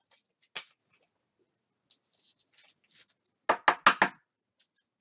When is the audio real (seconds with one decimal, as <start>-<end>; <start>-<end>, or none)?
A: 0.0-5.0